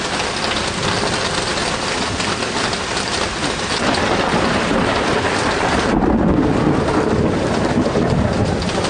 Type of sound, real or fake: real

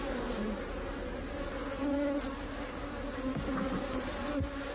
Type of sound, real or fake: real